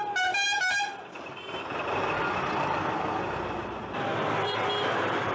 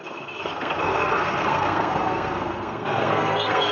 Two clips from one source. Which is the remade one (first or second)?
second